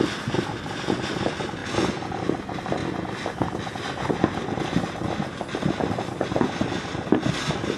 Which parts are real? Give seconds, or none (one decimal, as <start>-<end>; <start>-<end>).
0.0-7.8

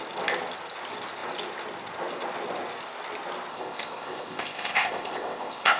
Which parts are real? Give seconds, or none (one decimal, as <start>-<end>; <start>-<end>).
0.0-3.5